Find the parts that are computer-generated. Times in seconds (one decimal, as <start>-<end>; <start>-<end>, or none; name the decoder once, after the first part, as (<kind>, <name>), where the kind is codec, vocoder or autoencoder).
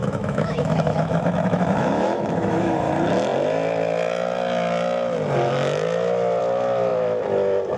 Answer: 0.0-2.9 (autoencoder, DAC-VAE)